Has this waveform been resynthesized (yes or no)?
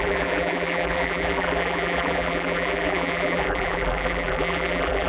yes